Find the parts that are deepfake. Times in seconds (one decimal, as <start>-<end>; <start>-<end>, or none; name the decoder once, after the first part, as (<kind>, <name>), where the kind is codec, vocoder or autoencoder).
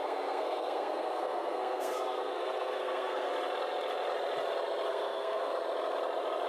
0.0-3.3 (codec, SNAC); 4.9-5.5